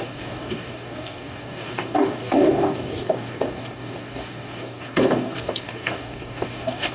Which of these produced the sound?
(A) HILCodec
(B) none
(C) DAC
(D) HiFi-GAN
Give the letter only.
C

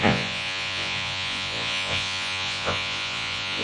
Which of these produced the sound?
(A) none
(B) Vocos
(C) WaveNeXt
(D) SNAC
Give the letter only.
B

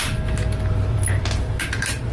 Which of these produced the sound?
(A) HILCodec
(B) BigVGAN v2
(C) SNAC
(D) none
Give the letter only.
D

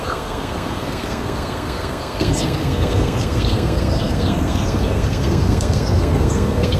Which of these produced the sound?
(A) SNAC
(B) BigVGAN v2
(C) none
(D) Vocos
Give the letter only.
A